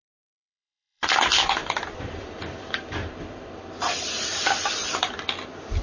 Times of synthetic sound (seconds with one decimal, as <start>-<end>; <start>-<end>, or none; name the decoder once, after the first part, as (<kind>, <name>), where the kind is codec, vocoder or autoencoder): 0.0-5.8 (vocoder, BigVGAN v2)